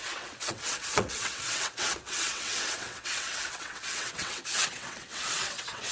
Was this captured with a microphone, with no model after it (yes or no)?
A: no